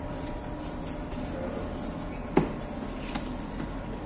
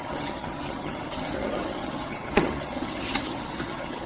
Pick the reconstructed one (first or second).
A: second